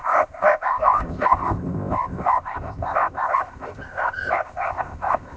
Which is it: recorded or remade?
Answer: remade